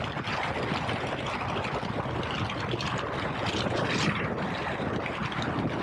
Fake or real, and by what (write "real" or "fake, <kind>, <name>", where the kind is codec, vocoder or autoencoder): real